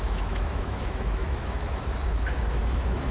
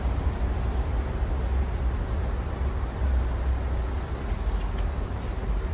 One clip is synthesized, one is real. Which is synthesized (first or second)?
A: first